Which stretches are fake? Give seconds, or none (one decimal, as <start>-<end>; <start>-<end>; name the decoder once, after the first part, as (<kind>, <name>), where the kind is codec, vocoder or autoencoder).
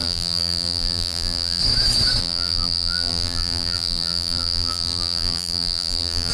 0.0-1.6 (vocoder, BigVGAN v2); 2.2-6.3